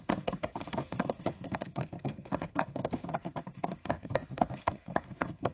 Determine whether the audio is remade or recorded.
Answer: remade